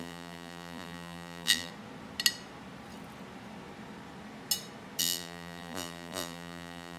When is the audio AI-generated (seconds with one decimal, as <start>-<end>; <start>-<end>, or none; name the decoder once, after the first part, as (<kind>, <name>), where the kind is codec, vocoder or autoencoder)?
0.0-1.7 (vocoder, BigVGAN v2); 5.0-7.0